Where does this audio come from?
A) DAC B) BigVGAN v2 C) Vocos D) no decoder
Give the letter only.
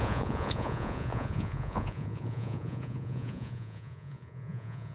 C